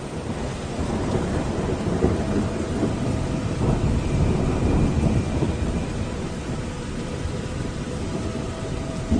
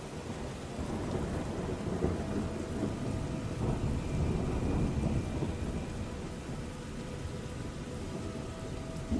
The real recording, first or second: second